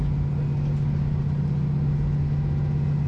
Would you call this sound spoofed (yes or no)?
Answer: no